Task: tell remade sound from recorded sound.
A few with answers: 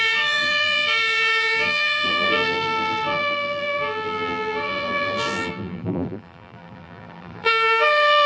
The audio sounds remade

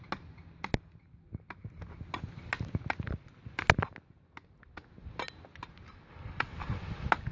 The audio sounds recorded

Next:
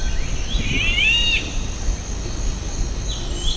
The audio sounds recorded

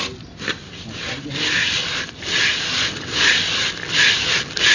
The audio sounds recorded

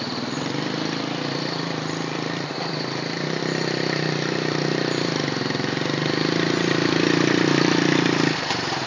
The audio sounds remade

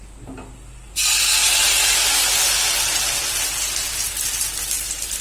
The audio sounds recorded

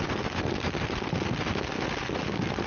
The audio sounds recorded